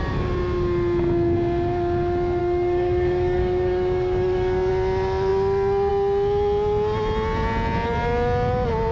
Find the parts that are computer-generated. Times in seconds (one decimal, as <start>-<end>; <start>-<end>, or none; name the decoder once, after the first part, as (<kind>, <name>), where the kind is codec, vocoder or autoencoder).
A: 2.4-4.7 (codec, DAC)